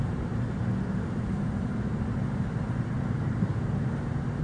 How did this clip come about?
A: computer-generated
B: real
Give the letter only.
A